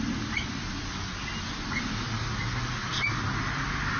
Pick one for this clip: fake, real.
real